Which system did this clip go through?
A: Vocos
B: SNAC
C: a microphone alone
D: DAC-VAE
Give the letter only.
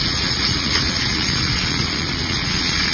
A